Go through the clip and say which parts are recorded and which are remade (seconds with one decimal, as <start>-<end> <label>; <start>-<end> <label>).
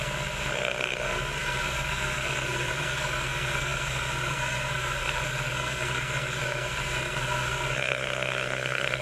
0.0-9.0 remade